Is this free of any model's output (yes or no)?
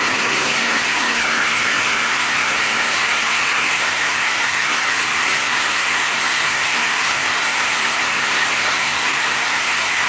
no